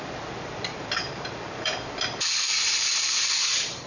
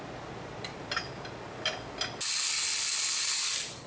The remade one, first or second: first